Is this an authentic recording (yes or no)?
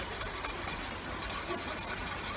yes